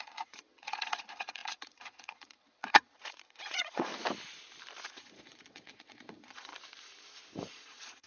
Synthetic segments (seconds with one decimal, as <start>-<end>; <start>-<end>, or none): 0.0-3.9; 4.9-6.5; 7.5-8.1